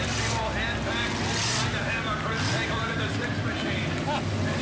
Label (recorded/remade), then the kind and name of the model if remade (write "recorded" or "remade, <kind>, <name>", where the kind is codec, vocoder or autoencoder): recorded